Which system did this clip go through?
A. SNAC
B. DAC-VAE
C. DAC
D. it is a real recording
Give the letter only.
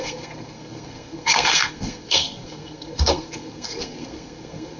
A